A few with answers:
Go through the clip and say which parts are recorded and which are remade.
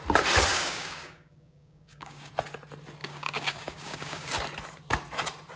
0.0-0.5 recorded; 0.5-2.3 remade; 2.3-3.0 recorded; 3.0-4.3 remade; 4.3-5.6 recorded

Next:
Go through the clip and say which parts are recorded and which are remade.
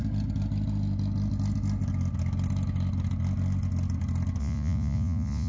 0.0-4.4 recorded; 4.4-5.5 remade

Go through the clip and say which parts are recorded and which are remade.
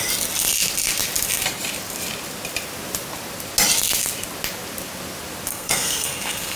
0.0-5.5 recorded; 5.5-6.6 remade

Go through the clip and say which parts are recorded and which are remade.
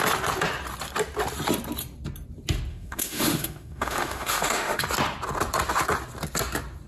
0.0-2.7 recorded; 2.7-4.8 remade; 4.8-6.9 recorded